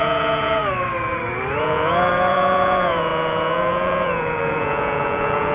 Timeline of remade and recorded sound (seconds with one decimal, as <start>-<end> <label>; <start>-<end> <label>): 0.0-0.6 remade; 0.6-1.6 recorded; 1.6-5.5 remade